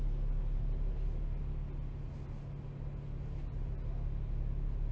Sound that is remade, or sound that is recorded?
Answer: recorded